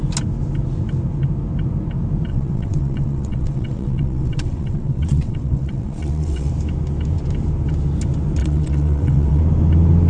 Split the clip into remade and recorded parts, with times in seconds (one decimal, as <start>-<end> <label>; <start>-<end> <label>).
0.0-2.3 recorded; 2.3-6.5 remade; 6.5-8.4 recorded; 8.4-9.4 remade; 9.4-10.1 recorded